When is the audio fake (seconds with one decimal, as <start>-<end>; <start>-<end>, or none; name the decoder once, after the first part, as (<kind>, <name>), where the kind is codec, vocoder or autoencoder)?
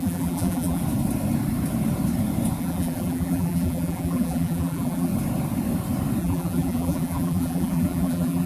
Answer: 0.0-0.8 (vocoder, BigVGAN v2); 2.6-5.1; 6.2-8.5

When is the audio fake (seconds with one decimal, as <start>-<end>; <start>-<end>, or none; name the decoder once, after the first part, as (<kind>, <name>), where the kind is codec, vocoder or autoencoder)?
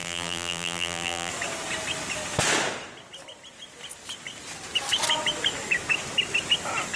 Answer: 0.0-1.3 (vocoder, BigVGAN v2)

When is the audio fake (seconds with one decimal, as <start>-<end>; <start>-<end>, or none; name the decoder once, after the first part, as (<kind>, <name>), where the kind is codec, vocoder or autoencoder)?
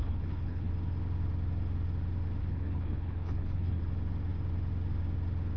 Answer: 0.0-0.7 (codec, HILCodec); 2.4-3.8